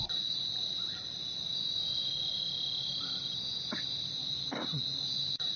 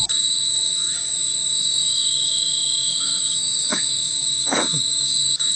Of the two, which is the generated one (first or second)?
second